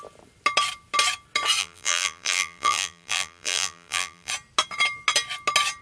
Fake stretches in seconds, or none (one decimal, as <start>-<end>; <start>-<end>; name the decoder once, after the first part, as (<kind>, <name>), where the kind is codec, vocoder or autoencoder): 1.6-4.3 (vocoder, BigVGAN v2)